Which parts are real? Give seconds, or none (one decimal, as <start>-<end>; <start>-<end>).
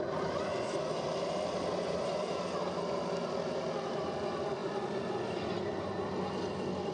0.0-6.9